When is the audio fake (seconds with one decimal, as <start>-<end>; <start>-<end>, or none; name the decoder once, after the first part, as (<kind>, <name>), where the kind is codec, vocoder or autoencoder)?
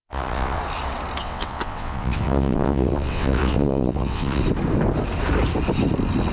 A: 0.0-0.6 (vocoder, WaveNeXt); 1.2-4.4